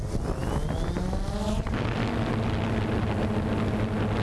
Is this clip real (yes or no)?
yes